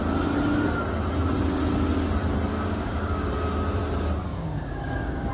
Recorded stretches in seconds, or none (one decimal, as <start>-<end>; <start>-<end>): 0.0-2.5; 3.3-4.3